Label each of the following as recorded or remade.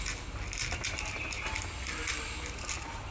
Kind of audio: recorded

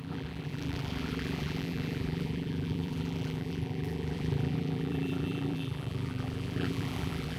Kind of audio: remade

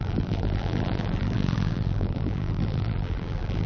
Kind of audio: remade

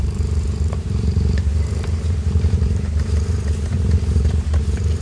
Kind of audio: remade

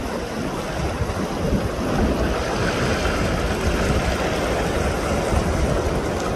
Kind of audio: recorded